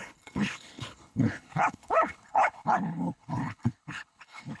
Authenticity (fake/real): fake